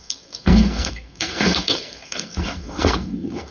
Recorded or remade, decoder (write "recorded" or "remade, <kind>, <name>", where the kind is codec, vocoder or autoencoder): remade, codec, SNAC